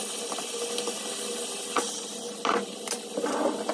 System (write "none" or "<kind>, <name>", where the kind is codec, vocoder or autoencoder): none